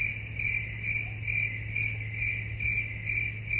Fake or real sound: real